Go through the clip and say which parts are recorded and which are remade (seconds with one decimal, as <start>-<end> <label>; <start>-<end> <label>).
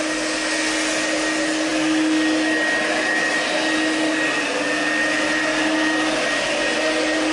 0.0-1.7 remade; 1.7-3.3 recorded; 3.3-7.3 remade